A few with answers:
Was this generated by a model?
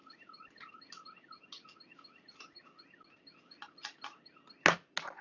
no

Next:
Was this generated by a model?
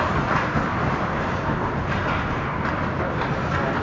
no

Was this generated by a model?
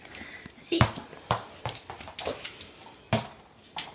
no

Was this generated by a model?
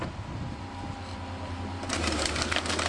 no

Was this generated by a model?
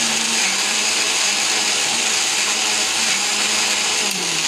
yes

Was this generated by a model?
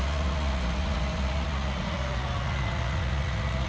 yes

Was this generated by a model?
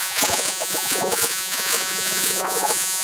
yes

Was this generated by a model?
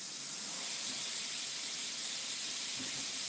yes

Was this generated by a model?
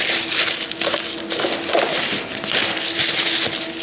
no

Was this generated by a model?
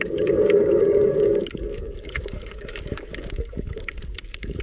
yes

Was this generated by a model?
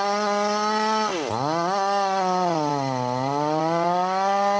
no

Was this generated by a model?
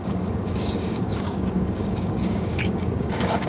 yes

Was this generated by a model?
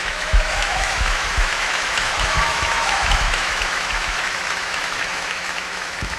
yes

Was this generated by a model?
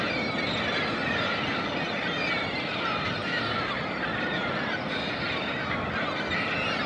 no